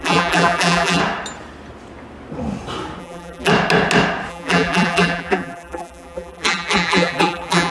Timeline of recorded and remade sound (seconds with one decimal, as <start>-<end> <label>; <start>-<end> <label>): 0.0-1.0 remade; 1.0-3.0 recorded; 3.0-3.5 remade; 3.5-4.3 recorded; 4.3-7.7 remade